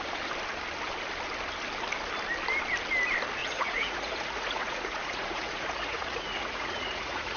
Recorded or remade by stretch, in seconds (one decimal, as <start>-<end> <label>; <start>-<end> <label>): 0.0-3.4 recorded; 3.4-7.4 remade